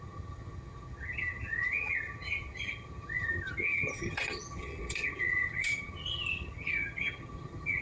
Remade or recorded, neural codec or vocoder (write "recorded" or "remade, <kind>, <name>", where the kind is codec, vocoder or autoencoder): remade, vocoder, HiFi-GAN